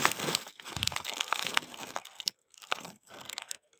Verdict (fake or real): fake